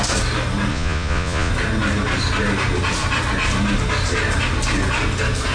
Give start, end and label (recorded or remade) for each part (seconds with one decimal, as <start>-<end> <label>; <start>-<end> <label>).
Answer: 0.0-0.7 recorded; 0.7-1.5 remade; 1.5-5.5 recorded